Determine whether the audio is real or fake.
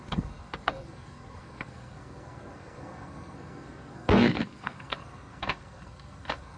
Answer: fake